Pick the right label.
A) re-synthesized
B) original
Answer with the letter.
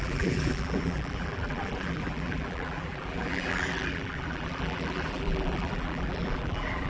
A